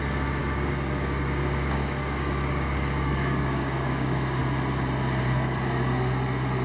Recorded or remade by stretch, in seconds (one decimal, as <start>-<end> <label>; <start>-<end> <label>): 0.0-0.4 recorded; 0.4-4.4 remade; 4.4-6.6 recorded